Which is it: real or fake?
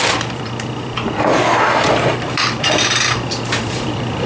fake